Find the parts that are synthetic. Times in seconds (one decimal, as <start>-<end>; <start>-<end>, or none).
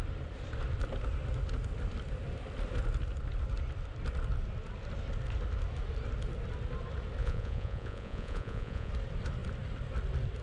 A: 7.2-8.9